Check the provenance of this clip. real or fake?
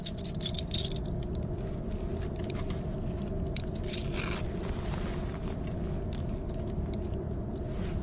real